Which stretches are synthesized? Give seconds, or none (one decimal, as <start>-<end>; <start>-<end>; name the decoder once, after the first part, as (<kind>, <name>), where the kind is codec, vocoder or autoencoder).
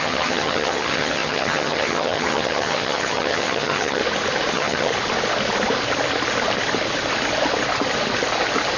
0.0-4.0 (vocoder, HiFi-GAN); 4.5-4.9